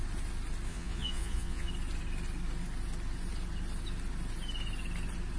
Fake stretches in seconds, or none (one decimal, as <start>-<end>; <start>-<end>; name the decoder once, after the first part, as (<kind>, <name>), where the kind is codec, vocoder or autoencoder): 0.7-1.7 (vocoder, Vocos)